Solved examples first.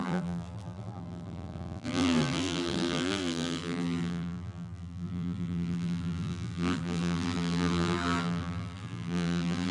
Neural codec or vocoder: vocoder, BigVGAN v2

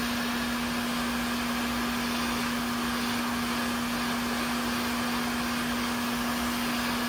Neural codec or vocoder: none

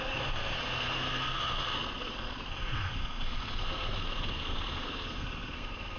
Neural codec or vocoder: codec, SNAC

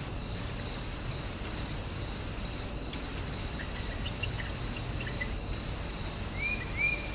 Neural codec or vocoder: none